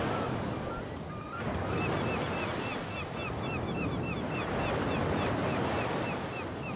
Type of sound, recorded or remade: recorded